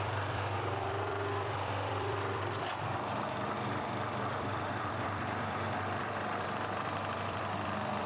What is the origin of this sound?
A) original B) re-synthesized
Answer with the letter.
B